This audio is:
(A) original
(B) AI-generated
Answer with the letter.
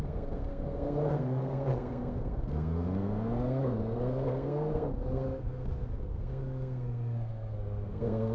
B